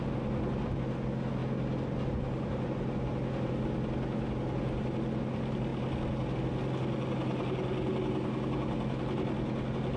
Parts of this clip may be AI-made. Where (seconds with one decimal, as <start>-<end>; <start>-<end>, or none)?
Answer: none